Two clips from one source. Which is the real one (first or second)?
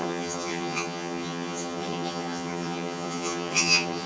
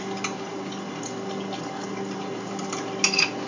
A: second